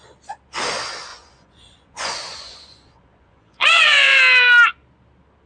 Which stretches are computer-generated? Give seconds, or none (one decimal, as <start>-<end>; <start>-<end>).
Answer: 1.1-4.2